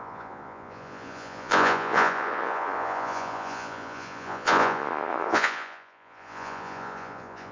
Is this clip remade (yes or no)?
yes